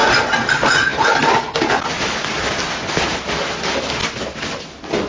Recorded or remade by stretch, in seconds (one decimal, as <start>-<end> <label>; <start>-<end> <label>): 0.0-5.1 recorded